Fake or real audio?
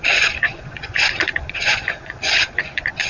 fake